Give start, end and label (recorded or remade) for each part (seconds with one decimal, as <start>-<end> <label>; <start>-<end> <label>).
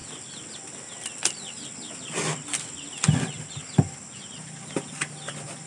0.0-3.4 recorded; 3.4-5.7 remade